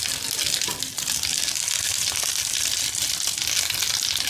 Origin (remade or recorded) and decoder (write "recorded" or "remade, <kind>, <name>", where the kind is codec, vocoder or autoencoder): recorded